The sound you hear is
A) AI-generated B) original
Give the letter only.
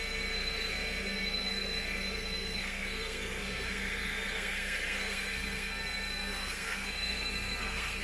A